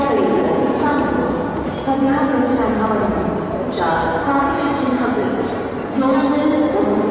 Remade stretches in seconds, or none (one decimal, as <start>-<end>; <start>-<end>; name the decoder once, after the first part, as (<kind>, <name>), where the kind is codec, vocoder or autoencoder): 0.0-3.2 (vocoder, Vocos); 4.4-5.2